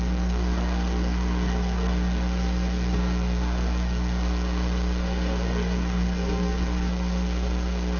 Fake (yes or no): yes